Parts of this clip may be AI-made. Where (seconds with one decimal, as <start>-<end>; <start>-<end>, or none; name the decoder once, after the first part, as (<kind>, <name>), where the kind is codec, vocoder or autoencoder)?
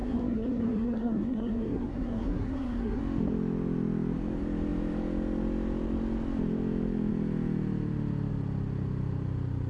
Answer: 0.0-3.0 (codec, SNAC)